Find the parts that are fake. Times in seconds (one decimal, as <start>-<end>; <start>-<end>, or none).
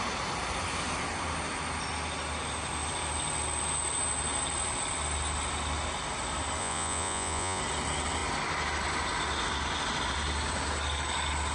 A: 6.6-7.6